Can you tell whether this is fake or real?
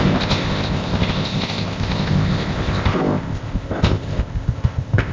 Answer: fake